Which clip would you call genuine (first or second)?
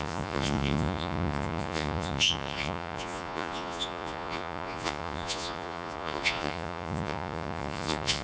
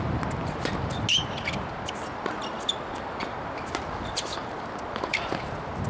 second